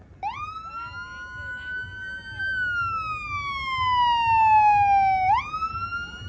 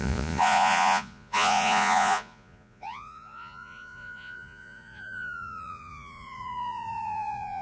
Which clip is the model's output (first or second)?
second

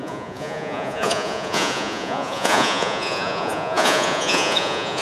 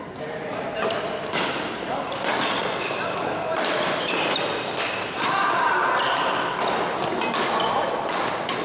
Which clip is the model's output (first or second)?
first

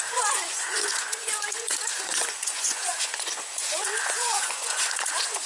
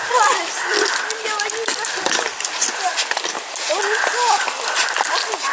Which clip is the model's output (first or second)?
first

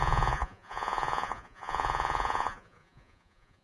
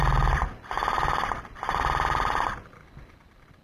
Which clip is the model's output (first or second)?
first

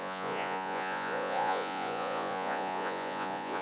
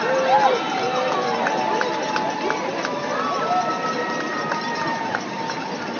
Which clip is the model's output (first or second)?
first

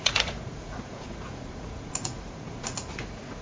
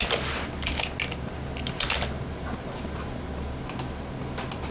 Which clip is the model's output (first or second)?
first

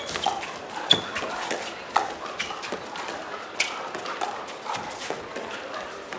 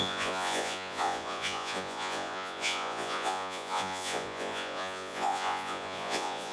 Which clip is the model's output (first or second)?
second